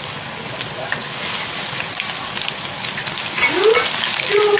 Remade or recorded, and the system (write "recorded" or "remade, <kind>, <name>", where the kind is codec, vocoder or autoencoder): recorded